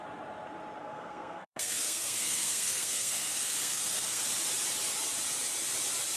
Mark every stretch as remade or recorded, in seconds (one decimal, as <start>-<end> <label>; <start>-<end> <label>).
0.0-0.8 recorded; 0.8-4.2 remade; 4.2-6.2 recorded